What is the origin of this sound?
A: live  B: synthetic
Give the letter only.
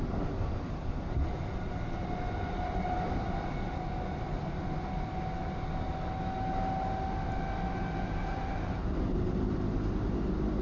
A